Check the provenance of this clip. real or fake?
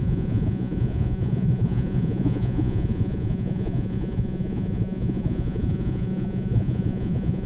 fake